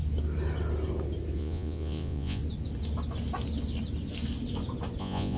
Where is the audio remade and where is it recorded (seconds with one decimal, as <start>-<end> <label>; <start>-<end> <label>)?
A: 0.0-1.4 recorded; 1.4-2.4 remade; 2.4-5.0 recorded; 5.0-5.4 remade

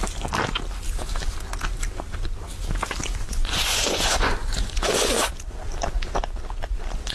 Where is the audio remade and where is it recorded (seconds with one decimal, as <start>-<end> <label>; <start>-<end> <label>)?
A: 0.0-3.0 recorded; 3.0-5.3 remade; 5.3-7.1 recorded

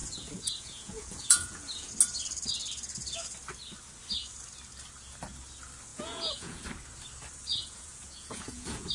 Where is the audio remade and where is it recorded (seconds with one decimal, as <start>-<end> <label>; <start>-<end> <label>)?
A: 0.0-1.9 remade; 1.9-5.9 recorded; 5.9-6.6 remade; 6.6-7.5 recorded; 7.5-8.9 remade